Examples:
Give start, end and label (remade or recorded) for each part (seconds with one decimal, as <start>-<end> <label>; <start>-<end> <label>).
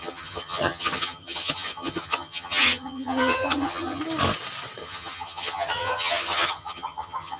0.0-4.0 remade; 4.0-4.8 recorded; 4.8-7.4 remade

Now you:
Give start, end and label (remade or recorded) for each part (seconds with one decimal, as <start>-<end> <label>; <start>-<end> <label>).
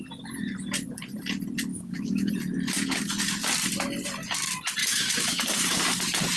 0.0-1.7 recorded; 1.7-2.3 remade; 2.3-4.8 recorded; 4.8-5.8 remade; 5.8-6.4 recorded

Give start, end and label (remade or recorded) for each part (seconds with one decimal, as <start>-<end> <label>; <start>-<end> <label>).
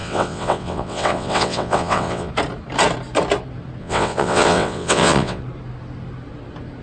0.0-2.3 remade; 2.3-3.8 recorded; 3.8-5.4 remade; 5.4-6.8 recorded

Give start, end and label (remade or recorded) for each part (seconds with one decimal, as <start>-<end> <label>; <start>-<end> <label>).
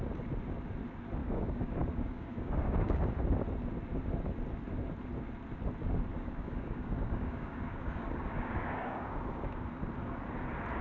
0.0-1.2 recorded; 1.2-3.1 remade; 3.1-6.1 recorded; 6.1-9.6 remade; 9.6-10.8 recorded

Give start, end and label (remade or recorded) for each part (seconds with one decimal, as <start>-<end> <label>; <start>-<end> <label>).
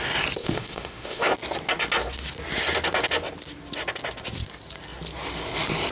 0.0-0.4 recorded; 0.4-1.3 remade; 1.3-5.9 recorded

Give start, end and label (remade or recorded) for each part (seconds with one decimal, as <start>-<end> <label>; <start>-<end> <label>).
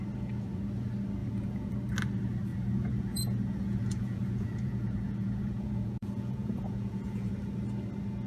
0.0-1.2 recorded; 1.2-1.7 remade; 1.7-2.5 recorded; 2.5-7.3 remade; 7.3-8.3 recorded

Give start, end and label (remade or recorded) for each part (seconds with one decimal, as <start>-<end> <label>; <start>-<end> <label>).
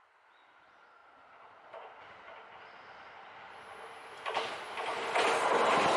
0.0-6.0 recorded